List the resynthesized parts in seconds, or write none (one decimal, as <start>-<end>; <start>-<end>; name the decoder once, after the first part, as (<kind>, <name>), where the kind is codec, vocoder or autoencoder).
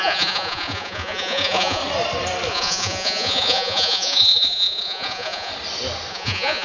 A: 0.0-1.8 (vocoder, Vocos); 2.5-5.5; 6.1-6.6